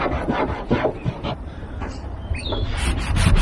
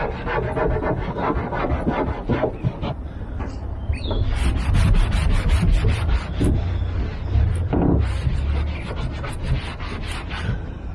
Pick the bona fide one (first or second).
second